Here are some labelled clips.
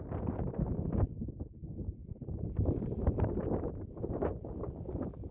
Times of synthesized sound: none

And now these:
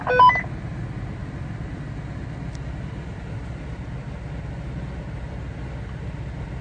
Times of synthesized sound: none

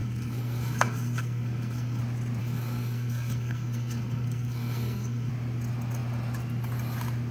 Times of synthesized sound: 0.0-2.0 (codec, SNAC); 2.4-5.3

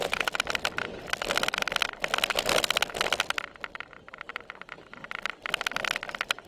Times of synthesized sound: none

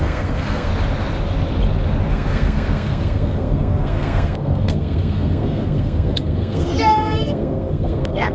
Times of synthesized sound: 0.0-0.7 (codec, SNAC); 2.1-8.3

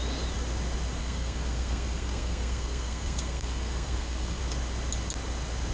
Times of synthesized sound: 1.0-4.4 (codec, SNAC)